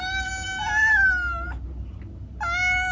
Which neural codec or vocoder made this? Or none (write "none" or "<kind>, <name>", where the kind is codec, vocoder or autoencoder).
none